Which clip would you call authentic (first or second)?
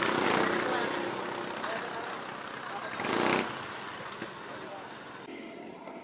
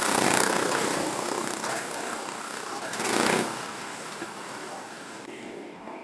first